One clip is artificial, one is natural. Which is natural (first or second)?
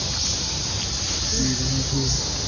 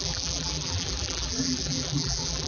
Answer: first